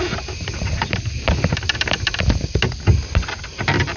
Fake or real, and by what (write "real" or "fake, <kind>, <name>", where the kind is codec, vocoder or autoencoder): real